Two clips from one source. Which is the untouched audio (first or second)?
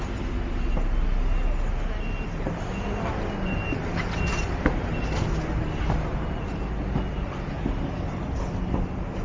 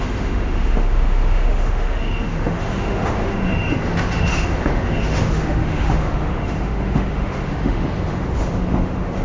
first